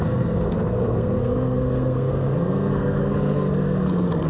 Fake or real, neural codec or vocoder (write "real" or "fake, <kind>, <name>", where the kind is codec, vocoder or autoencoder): fake, codec, SNAC